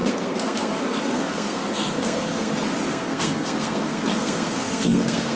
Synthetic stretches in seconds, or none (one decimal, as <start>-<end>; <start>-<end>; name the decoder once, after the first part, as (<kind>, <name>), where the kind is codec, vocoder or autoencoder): 0.0-2.5 (codec, SNAC); 2.9-5.4